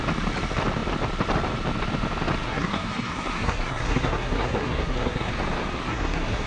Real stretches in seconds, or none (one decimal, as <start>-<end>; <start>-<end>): 0.0-2.4; 5.3-5.8